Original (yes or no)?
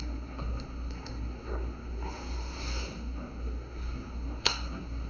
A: no